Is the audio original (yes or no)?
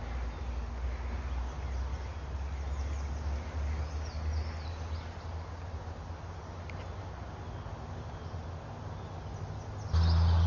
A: yes